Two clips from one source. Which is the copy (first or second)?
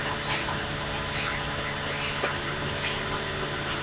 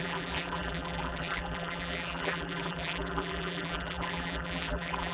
second